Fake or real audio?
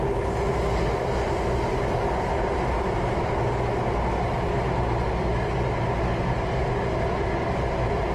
real